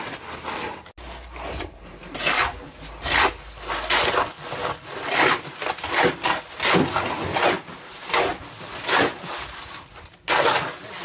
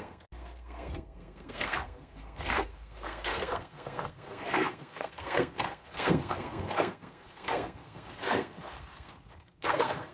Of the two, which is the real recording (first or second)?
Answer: first